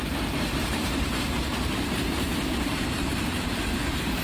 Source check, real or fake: fake